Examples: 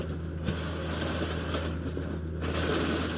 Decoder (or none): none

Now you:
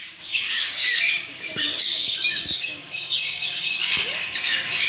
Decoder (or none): codec, DAC